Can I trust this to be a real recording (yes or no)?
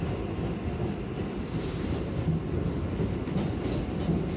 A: yes